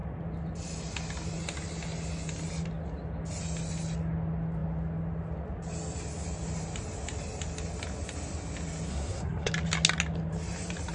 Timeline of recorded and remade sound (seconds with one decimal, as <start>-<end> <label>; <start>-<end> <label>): 0.0-8.9 recorded; 8.9-9.5 remade; 9.5-10.9 recorded